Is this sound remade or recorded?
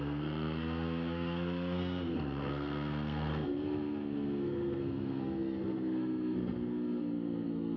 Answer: remade